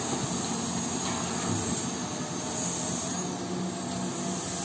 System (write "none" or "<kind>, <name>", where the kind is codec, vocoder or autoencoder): none